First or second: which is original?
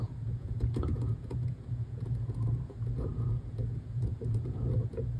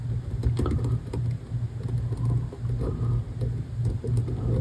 second